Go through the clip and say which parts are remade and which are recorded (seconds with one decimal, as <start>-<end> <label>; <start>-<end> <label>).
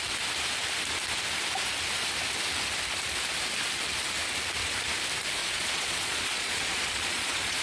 0.0-5.4 recorded; 5.4-7.6 remade